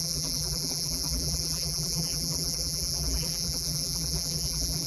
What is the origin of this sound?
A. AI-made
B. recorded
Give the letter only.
A